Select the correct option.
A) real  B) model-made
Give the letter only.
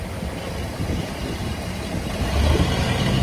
A